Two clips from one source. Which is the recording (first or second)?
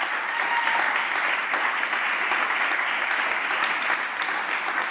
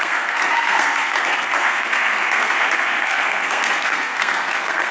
first